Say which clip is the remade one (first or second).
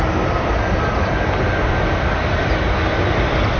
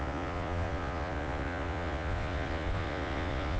second